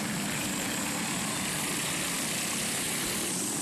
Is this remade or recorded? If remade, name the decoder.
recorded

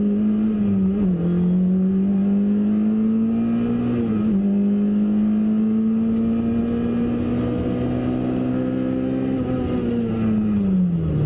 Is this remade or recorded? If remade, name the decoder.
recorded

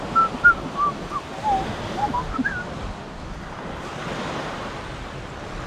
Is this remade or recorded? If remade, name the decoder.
recorded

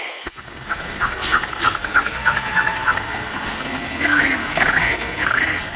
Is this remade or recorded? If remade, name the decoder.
remade, codec, SNAC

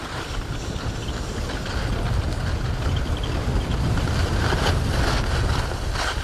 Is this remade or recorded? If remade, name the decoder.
recorded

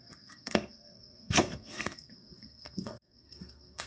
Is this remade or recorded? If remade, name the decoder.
remade, codec, SNAC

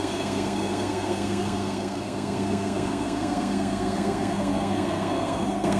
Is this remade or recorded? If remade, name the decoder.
remade, codec, SNAC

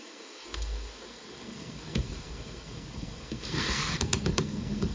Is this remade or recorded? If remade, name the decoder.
remade, codec, SNAC